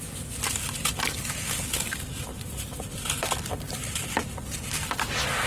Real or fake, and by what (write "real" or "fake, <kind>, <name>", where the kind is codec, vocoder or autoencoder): real